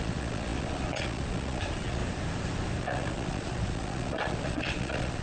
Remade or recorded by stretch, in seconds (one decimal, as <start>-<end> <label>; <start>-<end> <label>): 0.0-2.0 remade; 2.0-2.8 recorded; 2.8-5.2 remade